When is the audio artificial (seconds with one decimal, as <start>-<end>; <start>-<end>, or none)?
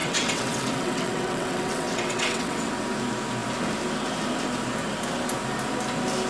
0.0-2.7